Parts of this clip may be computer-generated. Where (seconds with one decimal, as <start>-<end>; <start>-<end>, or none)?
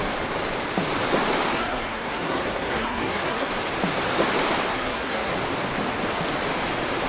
1.5-3.5; 4.7-5.3